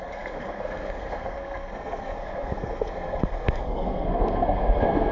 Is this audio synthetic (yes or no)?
yes